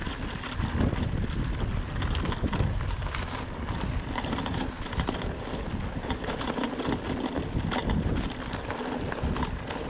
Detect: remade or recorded recorded